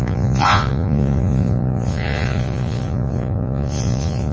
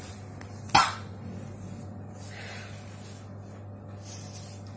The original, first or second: second